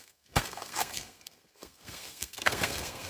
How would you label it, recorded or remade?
remade